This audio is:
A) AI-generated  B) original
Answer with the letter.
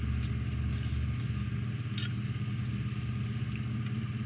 B